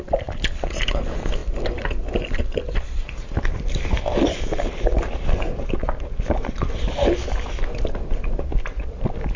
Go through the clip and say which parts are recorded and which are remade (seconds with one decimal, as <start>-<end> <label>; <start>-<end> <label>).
0.0-9.4 recorded